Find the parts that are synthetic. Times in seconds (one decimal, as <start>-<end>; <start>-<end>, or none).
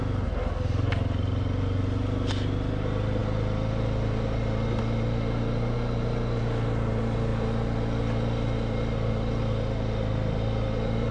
none